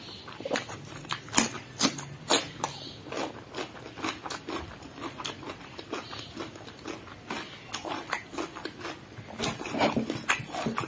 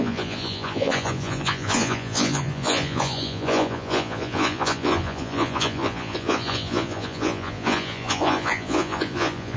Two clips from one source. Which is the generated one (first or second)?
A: second